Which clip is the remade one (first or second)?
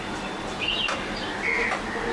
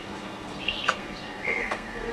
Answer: second